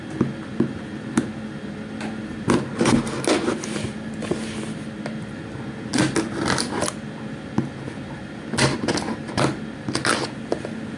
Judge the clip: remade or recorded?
recorded